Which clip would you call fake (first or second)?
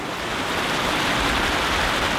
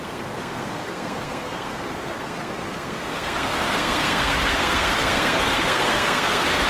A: second